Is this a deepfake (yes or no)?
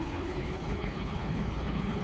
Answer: yes